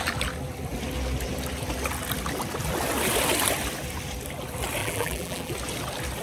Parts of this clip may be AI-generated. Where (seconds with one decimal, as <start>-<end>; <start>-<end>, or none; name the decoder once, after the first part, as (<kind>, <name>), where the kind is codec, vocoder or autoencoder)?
4.8-5.5 (vocoder, BigVGAN v2)